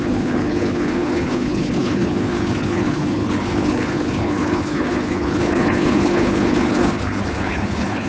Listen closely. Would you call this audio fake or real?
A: fake